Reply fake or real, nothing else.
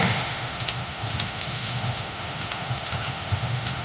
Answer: fake